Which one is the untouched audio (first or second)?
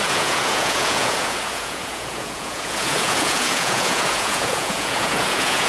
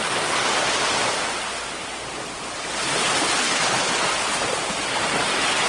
second